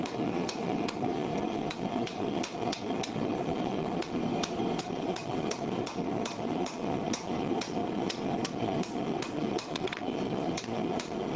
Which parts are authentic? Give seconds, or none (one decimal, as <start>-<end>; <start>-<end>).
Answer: 4.2-4.8